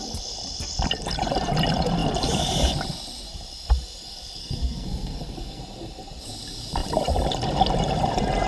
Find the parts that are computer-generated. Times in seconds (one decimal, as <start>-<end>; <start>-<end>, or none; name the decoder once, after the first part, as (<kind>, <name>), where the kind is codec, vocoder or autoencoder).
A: 4.4-5.6 (codec, SNAC)